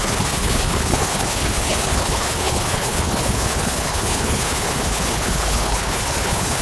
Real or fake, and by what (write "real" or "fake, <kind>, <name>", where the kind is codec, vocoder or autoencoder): fake, codec, HILCodec